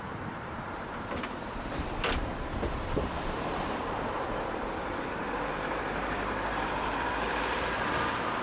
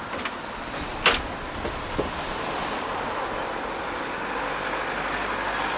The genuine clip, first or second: second